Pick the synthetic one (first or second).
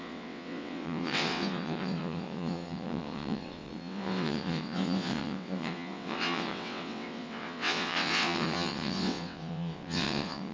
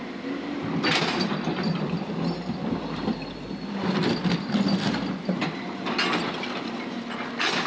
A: first